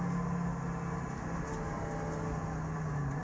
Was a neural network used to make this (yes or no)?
no